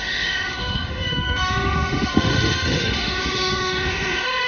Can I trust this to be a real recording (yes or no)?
no